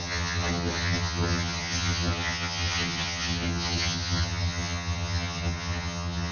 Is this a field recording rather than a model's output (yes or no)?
no